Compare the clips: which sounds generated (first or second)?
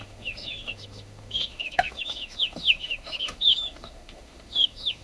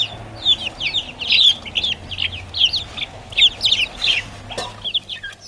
first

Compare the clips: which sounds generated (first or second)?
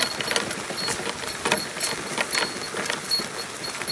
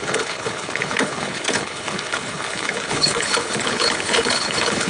second